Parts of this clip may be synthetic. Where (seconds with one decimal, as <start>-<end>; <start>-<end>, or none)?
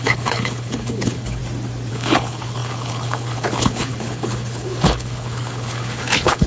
0.0-1.4; 1.9-6.5